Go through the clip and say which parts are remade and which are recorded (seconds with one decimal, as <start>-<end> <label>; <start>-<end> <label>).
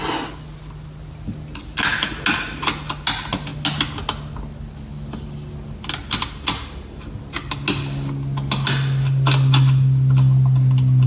0.0-11.1 recorded